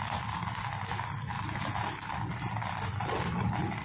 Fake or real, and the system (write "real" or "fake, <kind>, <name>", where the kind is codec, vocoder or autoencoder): real